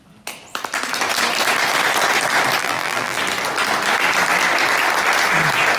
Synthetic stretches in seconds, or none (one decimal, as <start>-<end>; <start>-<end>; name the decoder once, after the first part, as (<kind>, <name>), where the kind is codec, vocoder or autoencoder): 2.6-3.2 (vocoder, BigVGAN v2)